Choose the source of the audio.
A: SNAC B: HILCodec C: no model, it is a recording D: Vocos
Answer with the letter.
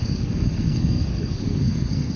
A